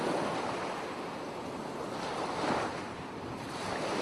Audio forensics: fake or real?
real